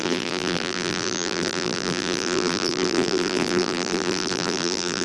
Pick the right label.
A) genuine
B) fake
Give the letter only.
B